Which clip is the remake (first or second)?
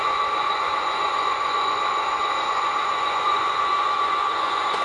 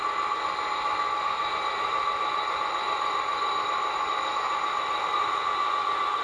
first